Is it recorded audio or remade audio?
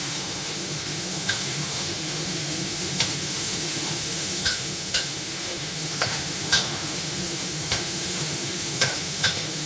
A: remade